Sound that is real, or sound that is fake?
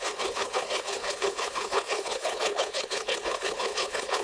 fake